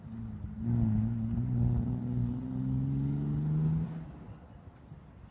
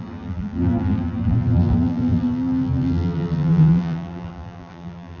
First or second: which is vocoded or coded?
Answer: second